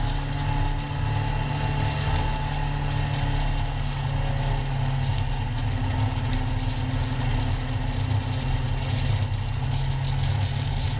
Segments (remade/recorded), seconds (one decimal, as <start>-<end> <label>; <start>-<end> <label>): 0.0-11.0 recorded